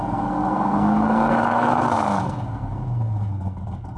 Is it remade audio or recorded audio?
remade